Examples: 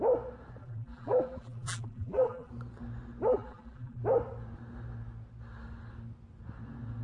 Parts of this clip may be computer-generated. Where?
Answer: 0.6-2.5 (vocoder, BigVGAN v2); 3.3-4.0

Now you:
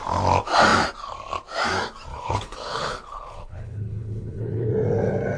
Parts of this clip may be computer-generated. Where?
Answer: 2.1-4.7 (codec, HILCodec)